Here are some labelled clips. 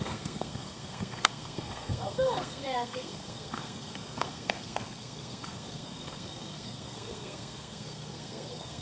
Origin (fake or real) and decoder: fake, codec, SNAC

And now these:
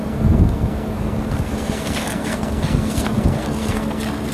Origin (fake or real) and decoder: fake, codec, SNAC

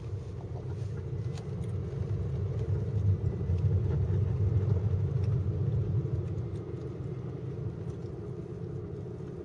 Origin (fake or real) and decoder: real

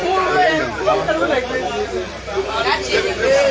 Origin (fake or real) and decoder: fake, vocoder, BigVGAN v2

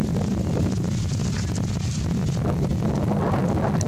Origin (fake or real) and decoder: real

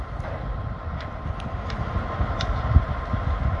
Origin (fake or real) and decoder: real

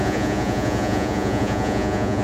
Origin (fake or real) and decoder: fake, vocoder, Vocos